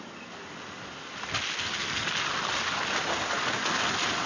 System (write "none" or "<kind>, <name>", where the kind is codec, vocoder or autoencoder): none